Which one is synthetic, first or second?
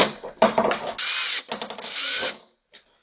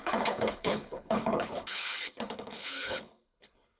second